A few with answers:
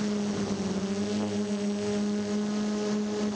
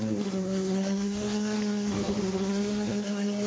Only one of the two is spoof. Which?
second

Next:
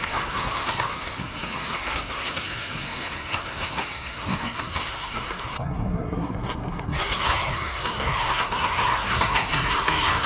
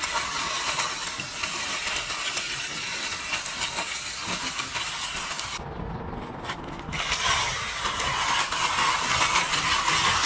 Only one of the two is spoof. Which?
first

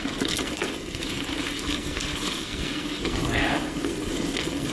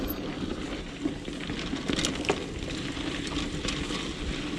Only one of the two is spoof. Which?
first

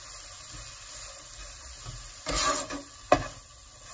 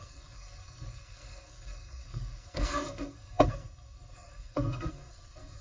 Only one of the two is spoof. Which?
second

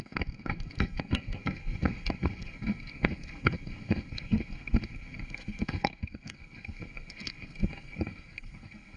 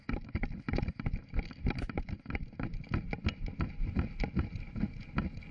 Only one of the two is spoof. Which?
first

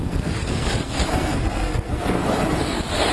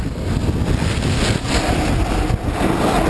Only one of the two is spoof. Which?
first